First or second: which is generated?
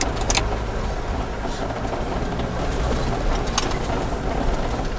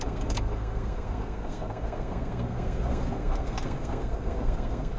second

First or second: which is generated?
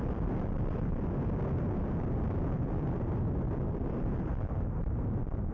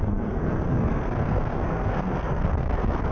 second